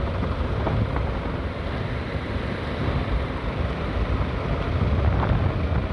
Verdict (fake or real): real